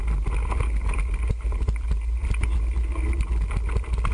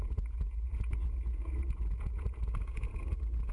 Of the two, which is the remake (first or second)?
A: second